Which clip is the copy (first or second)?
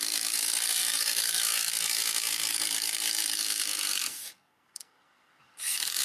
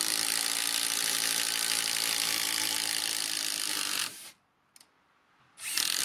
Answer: first